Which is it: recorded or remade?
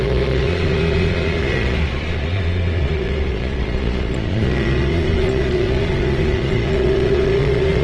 remade